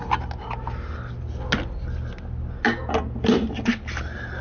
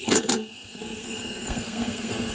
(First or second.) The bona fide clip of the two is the first